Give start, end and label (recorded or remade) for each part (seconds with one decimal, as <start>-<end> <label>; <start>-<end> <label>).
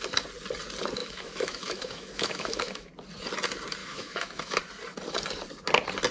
0.0-1.0 recorded; 1.0-2.9 remade; 2.9-3.8 recorded; 3.8-4.6 remade; 4.6-6.1 recorded